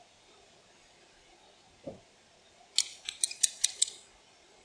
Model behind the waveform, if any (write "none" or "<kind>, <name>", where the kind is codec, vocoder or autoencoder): none